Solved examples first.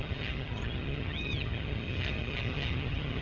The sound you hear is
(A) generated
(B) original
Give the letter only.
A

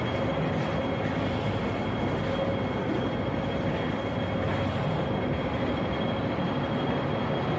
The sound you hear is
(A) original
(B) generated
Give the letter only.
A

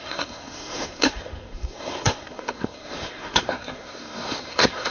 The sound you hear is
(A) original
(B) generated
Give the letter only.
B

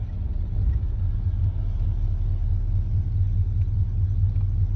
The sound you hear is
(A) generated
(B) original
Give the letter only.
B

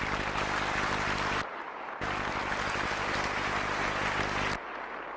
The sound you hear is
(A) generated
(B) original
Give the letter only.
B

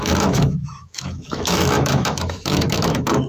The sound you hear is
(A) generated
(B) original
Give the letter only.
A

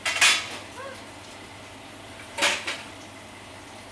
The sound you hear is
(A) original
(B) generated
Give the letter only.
A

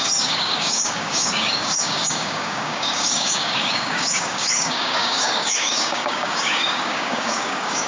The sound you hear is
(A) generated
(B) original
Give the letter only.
A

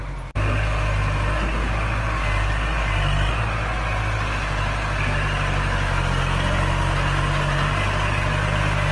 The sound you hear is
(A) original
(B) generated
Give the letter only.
A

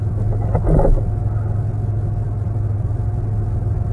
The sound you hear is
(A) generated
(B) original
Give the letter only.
B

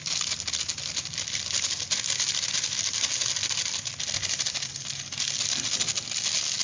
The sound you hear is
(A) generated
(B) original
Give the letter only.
B